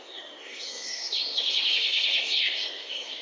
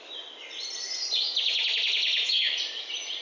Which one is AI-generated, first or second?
first